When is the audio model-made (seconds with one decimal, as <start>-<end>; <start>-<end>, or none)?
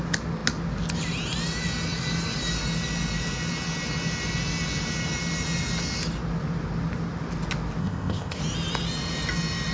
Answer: 7.8-8.4